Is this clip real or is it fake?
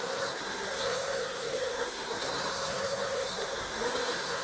fake